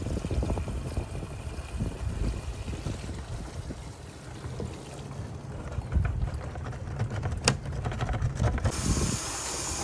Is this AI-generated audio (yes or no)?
no